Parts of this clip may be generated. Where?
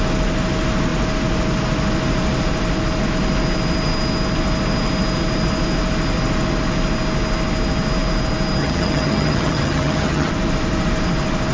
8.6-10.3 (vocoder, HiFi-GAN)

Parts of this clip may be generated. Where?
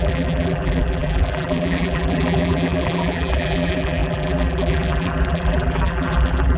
0.0-6.6 (vocoder, BigVGAN v2)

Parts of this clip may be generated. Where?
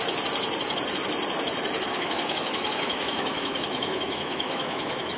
1.9-5.2 (autoencoder, DAC-VAE)